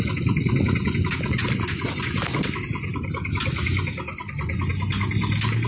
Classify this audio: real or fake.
real